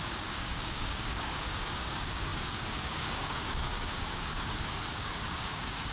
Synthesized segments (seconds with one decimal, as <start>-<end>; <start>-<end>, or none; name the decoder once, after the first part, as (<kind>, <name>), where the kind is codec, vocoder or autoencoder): 0.0-5.9 (codec, DAC)